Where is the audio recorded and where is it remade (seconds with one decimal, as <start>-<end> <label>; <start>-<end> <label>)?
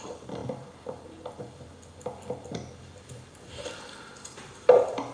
0.0-5.1 remade